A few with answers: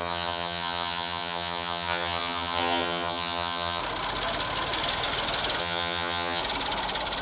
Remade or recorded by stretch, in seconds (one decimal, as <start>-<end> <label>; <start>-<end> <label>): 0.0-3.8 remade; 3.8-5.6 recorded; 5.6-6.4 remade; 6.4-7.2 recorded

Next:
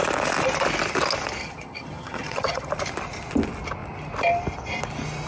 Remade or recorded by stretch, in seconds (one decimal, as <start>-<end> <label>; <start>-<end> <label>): 0.0-1.4 recorded; 1.4-2.7 remade; 2.7-5.3 recorded

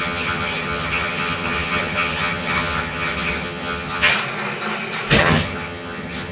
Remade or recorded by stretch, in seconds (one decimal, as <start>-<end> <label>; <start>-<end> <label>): 0.0-4.1 remade; 4.1-5.2 recorded; 5.2-6.3 remade